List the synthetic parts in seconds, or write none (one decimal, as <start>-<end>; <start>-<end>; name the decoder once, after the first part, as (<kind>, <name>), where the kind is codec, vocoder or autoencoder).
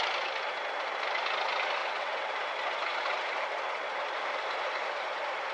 1.8-2.3 (vocoder, WaveNeXt)